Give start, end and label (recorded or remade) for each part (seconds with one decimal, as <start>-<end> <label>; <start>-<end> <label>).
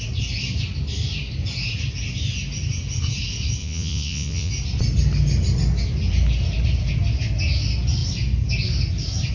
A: 0.0-3.6 recorded; 3.6-4.5 remade; 4.5-9.3 recorded